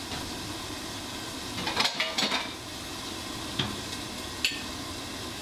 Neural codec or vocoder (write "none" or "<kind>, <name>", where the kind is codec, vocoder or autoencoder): none